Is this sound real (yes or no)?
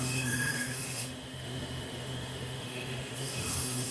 no